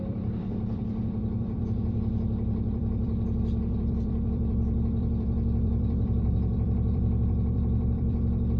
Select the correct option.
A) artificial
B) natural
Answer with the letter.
A